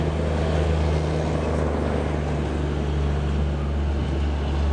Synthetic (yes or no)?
no